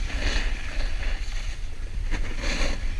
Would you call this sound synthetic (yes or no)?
no